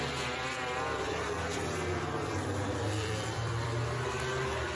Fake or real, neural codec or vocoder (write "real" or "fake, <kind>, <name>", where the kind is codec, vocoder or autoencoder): fake, vocoder, BigVGAN v2